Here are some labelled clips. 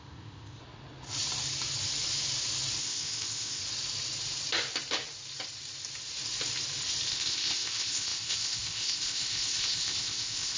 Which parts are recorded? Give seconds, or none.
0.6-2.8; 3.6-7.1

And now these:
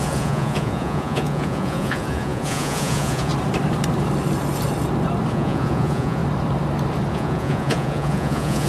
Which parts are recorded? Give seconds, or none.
3.3-5.3; 6.2-7.1

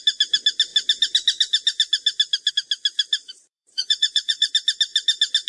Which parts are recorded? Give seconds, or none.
0.0-3.2; 4.5-5.5

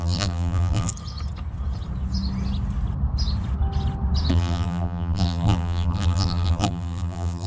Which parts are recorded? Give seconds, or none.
0.9-4.3

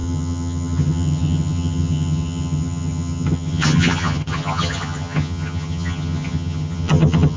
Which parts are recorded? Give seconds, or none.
none

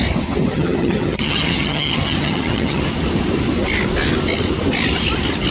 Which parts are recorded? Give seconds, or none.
0.0-0.5; 2.8-5.5

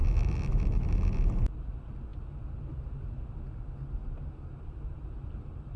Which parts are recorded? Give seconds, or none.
0.0-4.0

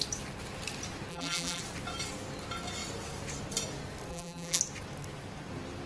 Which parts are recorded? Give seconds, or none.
0.0-1.1; 1.6-4.1; 4.6-5.9